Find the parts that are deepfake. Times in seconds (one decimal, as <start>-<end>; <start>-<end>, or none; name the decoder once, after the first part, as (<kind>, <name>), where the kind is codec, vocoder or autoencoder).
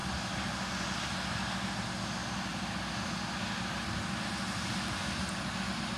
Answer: none